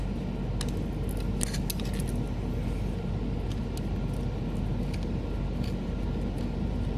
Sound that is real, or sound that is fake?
real